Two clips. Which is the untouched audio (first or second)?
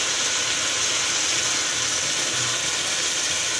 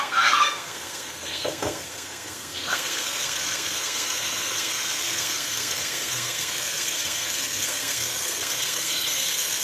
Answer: first